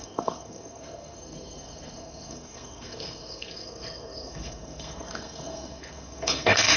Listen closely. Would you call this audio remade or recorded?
remade